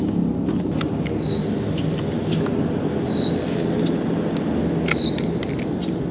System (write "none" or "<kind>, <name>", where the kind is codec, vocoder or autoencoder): none